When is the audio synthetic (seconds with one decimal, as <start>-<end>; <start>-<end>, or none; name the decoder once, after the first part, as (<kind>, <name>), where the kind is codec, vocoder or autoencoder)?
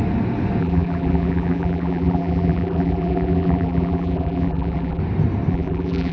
0.6-5.0 (vocoder, BigVGAN v2); 5.5-6.1